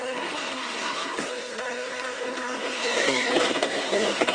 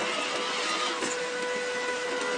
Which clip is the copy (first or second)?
first